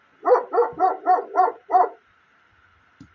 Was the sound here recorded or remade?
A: recorded